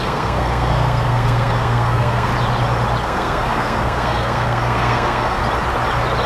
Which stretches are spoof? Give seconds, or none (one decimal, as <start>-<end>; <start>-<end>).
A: 0.0-2.3; 3.0-5.4